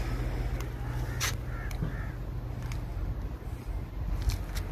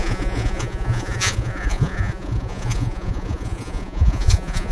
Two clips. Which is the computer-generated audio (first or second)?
second